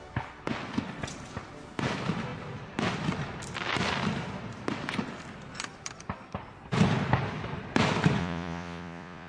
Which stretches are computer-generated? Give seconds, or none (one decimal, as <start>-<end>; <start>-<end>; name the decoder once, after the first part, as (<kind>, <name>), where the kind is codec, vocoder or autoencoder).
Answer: 8.2-9.3 (vocoder, Vocos)